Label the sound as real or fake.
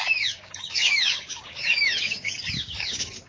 fake